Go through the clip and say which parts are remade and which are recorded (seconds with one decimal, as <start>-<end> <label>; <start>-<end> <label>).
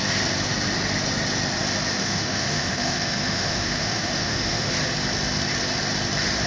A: 0.0-2.0 recorded; 2.0-4.7 remade; 4.7-6.5 recorded